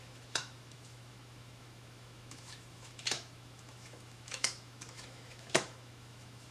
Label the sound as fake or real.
fake